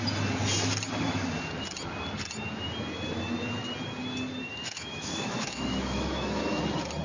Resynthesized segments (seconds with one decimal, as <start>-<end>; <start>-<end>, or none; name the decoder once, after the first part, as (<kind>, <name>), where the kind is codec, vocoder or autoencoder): 4.5-6.6 (autoencoder, DAC-VAE)

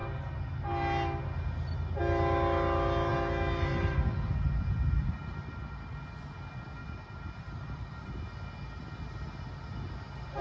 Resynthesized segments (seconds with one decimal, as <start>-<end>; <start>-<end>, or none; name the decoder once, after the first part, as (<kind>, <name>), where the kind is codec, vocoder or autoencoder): 6.8-8.2 (vocoder, BigVGAN v2)

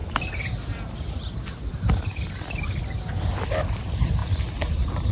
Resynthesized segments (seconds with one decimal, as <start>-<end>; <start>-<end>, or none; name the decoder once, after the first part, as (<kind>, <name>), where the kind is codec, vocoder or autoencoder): none

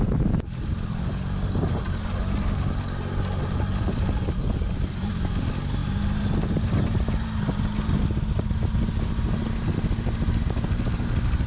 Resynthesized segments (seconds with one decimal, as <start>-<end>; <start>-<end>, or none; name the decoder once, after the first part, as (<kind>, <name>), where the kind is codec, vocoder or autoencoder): none

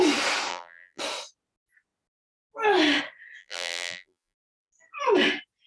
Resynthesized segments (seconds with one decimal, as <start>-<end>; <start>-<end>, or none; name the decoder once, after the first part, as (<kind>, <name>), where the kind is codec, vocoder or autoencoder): 0.5-1.0 (vocoder, BigVGAN v2); 3.4-4.7

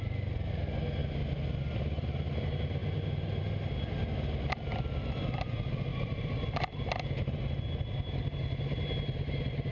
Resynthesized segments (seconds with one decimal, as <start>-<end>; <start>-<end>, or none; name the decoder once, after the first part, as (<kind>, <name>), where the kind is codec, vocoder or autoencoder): none